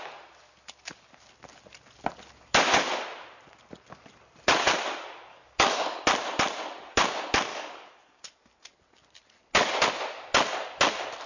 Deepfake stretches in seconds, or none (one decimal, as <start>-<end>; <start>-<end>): 5.3-6.0; 7.5-8.2